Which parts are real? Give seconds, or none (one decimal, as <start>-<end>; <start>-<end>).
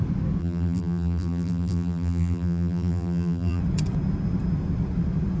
0.0-0.4; 3.6-5.4